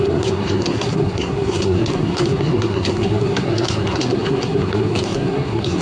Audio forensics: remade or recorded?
remade